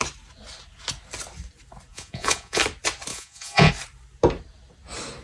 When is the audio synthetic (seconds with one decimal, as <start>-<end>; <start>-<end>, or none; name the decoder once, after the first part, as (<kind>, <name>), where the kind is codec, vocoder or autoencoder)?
1.9-2.6 (vocoder, Vocos); 3.1-3.7